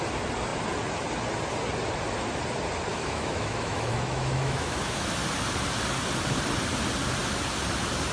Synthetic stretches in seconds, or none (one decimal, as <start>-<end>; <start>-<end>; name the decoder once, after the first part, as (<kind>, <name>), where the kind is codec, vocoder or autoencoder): 2.9-5.1 (autoencoder, DAC-VAE)

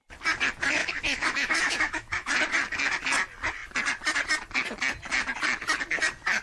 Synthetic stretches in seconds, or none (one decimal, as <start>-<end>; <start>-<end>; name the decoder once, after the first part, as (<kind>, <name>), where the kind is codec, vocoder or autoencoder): 0.8-2.3 (autoencoder, DAC-VAE)

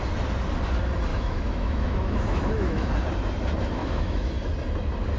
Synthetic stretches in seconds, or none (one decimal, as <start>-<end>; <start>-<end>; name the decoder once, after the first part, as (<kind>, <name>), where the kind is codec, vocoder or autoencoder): 1.1-2.9 (autoencoder, DAC-VAE); 3.8-4.3

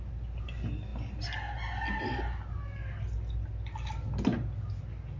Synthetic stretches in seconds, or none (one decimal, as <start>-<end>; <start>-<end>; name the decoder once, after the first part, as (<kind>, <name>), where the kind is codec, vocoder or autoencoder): none

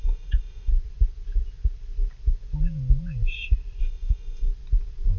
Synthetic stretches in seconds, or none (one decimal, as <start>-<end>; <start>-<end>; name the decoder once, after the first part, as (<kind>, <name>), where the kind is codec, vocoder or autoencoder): 0.0-0.7 (autoencoder, DAC-VAE); 3.8-4.5

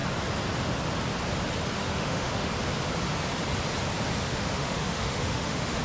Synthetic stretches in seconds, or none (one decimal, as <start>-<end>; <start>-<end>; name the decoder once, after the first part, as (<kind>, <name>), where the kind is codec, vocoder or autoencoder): 1.8-2.5 (autoencoder, DAC-VAE); 4.3-5.8

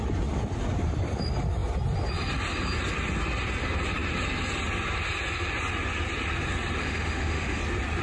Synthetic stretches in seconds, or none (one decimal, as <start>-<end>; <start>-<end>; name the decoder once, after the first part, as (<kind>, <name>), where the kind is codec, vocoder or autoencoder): 6.8-7.6 (autoencoder, DAC-VAE)